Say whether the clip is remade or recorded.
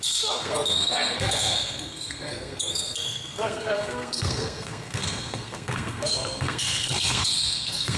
remade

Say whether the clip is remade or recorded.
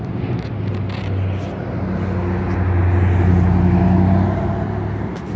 recorded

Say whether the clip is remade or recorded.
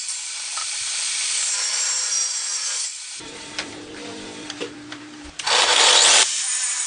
remade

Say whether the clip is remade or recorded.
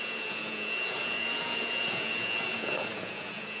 remade